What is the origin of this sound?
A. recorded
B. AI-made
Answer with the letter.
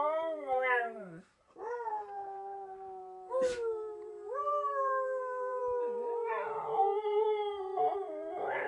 B